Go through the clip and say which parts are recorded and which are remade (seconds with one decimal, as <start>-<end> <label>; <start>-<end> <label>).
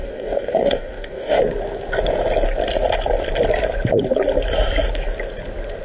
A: 0.0-1.4 remade; 1.4-5.8 recorded